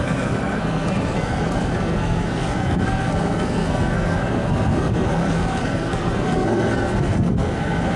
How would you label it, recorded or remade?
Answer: remade